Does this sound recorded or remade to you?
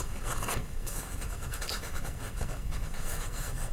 remade